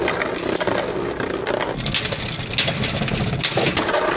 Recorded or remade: recorded